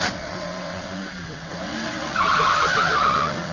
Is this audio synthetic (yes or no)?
yes